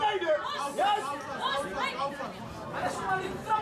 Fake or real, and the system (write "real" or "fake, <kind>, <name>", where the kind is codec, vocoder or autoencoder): real